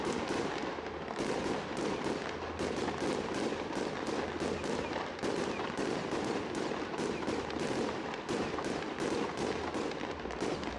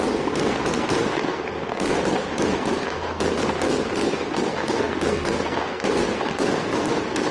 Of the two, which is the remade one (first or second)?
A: second